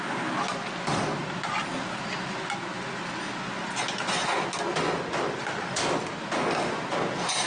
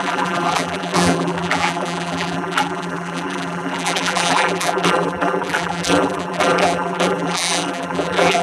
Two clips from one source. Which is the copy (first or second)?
second